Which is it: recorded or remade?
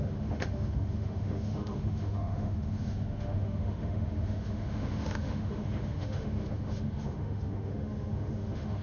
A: remade